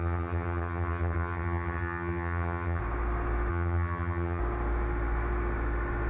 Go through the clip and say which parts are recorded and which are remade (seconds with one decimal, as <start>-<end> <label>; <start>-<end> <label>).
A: 0.0-2.8 remade; 2.8-3.5 recorded; 3.5-4.4 remade; 4.4-6.1 recorded